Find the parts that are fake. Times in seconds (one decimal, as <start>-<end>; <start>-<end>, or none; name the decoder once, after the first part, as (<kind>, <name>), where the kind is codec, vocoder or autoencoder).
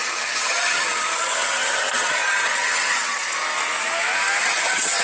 0.0-3.2 (vocoder, HiFi-GAN); 4.4-5.0